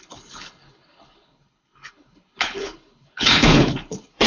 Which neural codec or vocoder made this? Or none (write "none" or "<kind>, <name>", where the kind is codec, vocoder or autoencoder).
codec, HILCodec